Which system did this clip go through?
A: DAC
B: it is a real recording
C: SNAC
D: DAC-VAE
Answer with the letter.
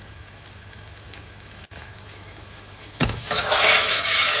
D